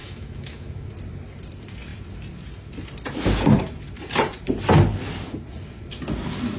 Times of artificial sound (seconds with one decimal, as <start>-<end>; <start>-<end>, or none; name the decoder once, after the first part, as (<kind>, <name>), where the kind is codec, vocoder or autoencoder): 0.0-0.9 (autoencoder, DAC-VAE)